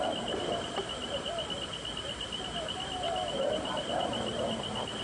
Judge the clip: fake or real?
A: real